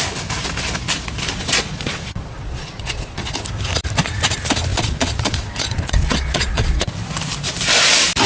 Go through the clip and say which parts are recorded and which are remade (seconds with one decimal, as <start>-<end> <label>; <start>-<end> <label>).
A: 0.0-1.3 recorded; 1.3-3.3 remade; 3.3-4.7 recorded; 4.7-6.9 remade; 6.9-8.3 recorded

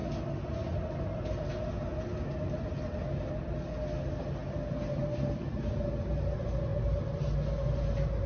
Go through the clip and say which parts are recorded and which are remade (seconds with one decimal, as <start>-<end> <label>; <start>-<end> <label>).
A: 0.0-8.3 recorded

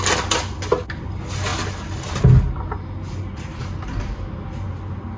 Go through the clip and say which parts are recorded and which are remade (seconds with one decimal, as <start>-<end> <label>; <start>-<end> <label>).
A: 0.0-5.2 recorded

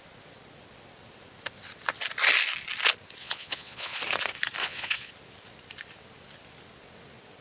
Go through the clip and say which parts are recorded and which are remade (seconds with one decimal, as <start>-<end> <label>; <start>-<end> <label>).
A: 0.0-3.2 recorded; 3.2-4.0 remade; 4.0-4.6 recorded; 4.6-5.1 remade; 5.1-7.4 recorded